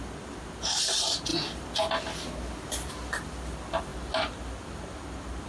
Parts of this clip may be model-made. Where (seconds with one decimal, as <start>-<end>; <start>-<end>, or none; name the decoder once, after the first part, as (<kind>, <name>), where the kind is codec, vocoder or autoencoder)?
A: none